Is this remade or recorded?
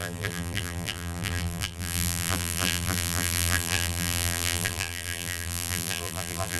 remade